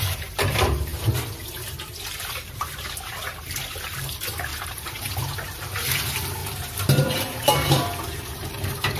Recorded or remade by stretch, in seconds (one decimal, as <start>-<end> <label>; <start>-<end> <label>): 0.0-0.9 remade; 0.9-2.2 recorded; 2.2-9.0 remade